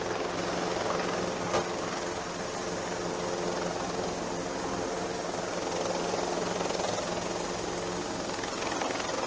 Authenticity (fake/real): real